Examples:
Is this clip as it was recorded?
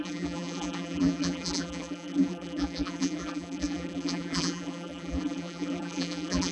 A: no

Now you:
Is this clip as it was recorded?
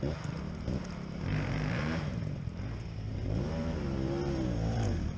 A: no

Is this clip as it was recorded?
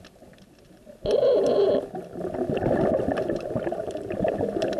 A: yes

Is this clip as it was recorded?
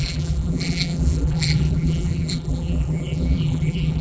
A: no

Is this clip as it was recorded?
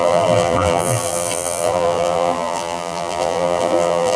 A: no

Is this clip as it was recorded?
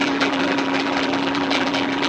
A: no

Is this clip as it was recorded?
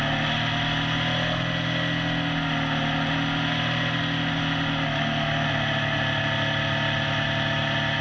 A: yes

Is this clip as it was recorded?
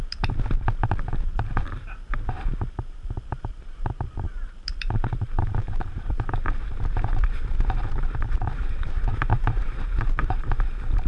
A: no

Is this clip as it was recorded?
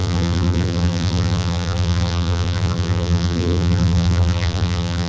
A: no